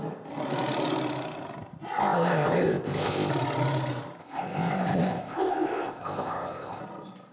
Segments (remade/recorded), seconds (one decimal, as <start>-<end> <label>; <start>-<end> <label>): 0.0-2.0 recorded; 2.0-3.3 remade; 3.3-4.2 recorded; 4.2-6.8 remade; 6.8-7.3 recorded